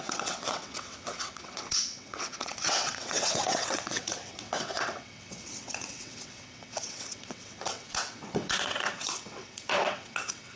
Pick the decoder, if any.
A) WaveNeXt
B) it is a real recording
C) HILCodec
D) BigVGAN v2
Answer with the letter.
A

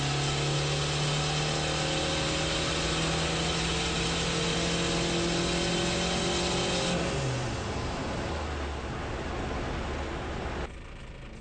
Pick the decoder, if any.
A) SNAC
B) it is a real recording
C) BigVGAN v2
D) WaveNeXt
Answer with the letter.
B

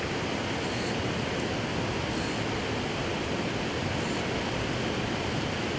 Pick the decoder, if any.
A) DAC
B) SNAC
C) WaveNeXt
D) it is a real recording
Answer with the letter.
D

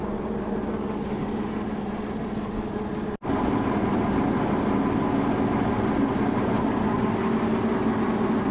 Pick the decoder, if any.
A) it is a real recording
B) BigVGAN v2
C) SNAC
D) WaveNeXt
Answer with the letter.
A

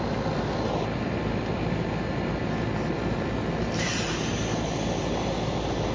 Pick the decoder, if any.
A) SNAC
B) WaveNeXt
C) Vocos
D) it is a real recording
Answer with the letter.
D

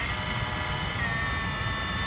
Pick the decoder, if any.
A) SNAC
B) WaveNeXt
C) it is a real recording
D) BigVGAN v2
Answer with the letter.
C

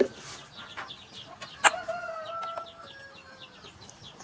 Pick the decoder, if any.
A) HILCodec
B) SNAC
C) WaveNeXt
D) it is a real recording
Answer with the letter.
D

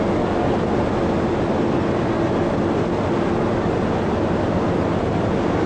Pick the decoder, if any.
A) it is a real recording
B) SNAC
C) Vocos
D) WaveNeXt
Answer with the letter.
A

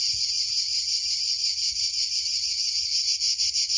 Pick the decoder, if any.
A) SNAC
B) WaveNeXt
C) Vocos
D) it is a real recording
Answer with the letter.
D